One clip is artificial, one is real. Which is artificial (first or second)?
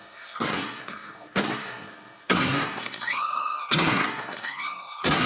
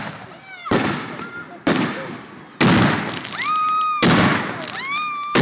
first